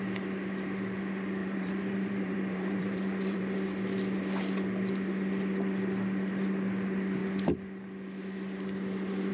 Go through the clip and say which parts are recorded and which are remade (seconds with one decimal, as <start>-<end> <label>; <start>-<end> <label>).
0.0-1.4 recorded; 1.4-3.4 remade; 3.4-9.3 recorded